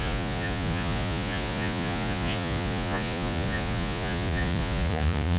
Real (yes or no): no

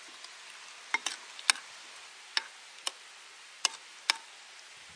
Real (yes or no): yes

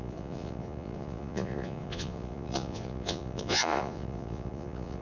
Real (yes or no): no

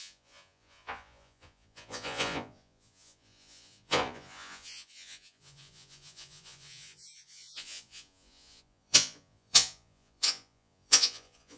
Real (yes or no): no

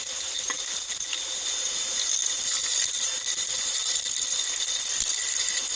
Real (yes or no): yes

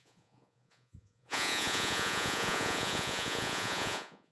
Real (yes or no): no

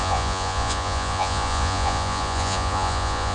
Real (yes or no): no